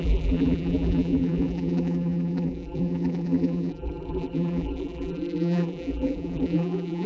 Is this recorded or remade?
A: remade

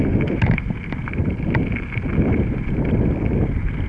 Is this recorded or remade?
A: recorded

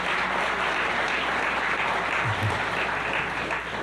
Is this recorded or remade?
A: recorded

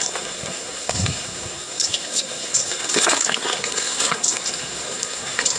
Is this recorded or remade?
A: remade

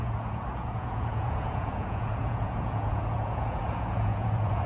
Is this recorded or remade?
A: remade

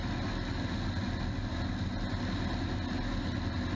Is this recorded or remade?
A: recorded